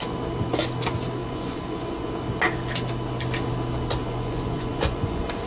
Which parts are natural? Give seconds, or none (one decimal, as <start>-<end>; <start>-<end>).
0.0-1.2; 2.1-4.0